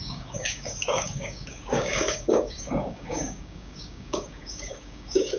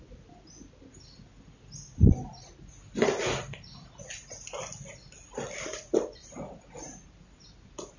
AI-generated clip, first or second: first